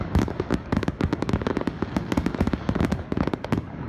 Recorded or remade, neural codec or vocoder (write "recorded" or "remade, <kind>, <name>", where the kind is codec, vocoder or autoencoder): remade, codec, DAC